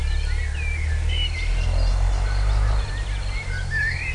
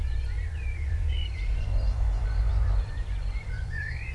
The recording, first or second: first